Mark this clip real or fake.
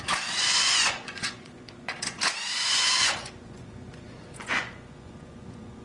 fake